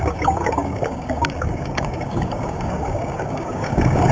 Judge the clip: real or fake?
fake